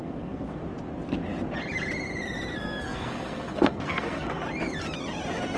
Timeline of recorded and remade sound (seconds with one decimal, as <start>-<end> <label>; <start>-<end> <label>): 0.0-0.6 remade; 0.6-2.5 recorded; 2.5-4.4 remade; 4.4-5.6 recorded

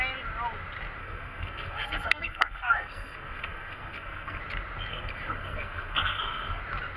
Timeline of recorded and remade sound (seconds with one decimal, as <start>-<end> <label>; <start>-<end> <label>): 0.0-1.0 recorded; 1.0-4.4 remade; 4.4-4.9 recorded; 4.9-6.6 remade; 6.6-7.0 recorded

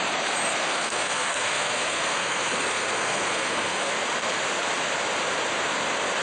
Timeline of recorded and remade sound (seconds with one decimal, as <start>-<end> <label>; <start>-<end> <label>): 0.0-0.5 recorded; 0.5-3.9 remade; 3.9-6.2 recorded

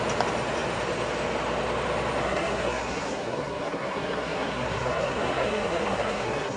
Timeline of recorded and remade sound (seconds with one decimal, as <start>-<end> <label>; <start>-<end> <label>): 0.0-2.2 recorded; 2.2-6.6 remade

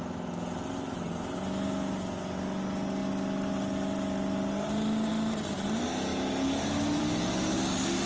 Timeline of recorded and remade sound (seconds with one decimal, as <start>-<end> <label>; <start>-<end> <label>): 0.0-8.1 recorded